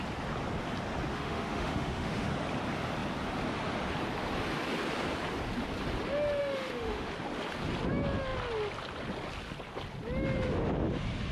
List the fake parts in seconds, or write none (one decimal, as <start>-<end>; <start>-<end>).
1.1-2.3; 6.4-7.1